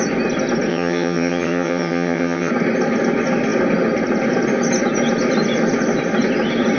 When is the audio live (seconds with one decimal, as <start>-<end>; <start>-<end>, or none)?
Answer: 0.0-0.7; 2.5-6.8